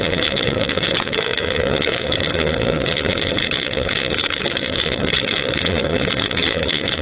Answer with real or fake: fake